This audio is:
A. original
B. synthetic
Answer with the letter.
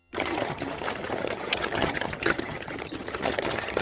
B